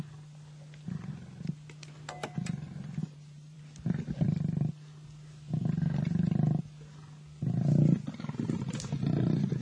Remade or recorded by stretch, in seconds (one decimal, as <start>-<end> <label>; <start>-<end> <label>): 0.0-3.0 recorded; 3.0-3.6 remade; 3.6-9.6 recorded